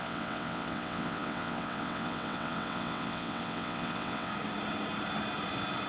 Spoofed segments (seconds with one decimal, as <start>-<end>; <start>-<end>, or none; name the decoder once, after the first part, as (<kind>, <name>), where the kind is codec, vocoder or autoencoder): 0.0-4.3 (vocoder, WaveNeXt)